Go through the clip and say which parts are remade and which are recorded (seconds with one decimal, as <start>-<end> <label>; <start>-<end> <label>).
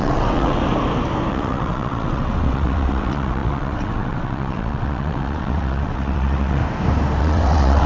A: 0.0-0.6 remade; 0.6-1.3 recorded; 1.3-6.6 remade; 6.6-7.2 recorded; 7.2-7.9 remade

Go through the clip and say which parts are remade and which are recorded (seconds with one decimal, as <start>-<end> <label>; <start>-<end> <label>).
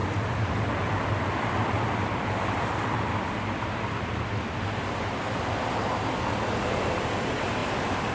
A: 0.0-3.4 remade; 3.4-8.1 recorded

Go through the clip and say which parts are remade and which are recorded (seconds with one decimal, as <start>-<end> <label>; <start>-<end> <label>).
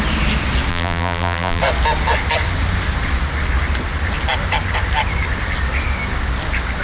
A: 0.0-0.7 recorded; 0.7-1.6 remade; 1.6-6.8 recorded